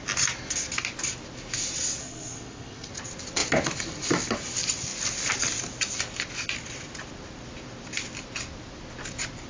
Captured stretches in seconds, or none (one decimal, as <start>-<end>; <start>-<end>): 0.0-2.0; 2.9-9.5